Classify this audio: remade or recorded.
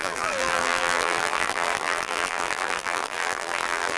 remade